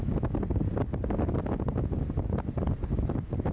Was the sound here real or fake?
real